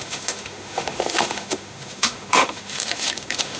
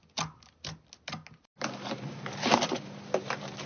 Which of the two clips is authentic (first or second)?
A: second